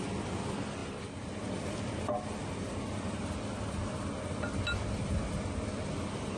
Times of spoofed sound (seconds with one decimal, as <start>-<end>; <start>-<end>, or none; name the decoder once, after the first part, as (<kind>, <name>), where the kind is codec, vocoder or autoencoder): 0.8-1.5 (vocoder, BigVGAN v2)